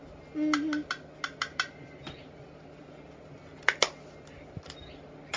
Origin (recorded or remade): recorded